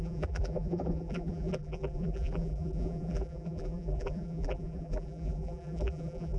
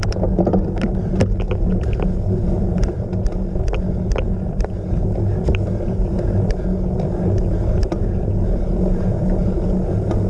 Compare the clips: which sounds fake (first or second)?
first